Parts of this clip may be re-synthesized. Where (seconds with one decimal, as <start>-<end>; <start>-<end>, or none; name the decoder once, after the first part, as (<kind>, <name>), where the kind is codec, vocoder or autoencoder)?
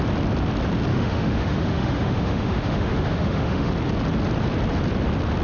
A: 0.9-3.7 (autoencoder, DAC-VAE)